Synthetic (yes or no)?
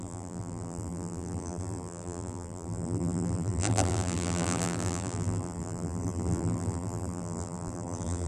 yes